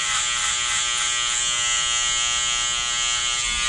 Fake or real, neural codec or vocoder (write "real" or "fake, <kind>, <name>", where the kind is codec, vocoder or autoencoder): real